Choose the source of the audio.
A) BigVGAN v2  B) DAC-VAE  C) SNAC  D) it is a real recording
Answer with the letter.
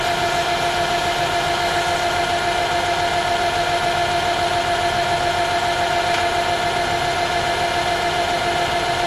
D